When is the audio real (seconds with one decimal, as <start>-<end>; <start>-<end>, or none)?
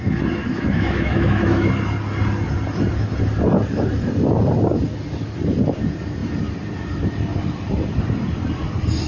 0.0-0.4; 1.7-9.1